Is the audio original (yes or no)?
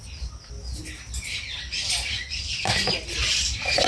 yes